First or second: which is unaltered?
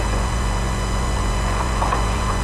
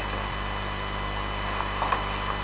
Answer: second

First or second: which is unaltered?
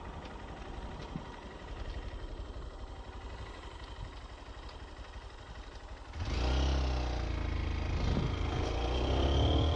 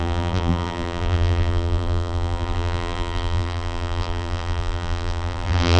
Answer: first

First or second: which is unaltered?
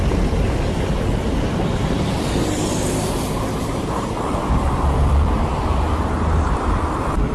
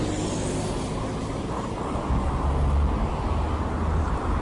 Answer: second